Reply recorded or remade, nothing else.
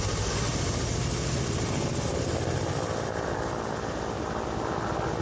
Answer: recorded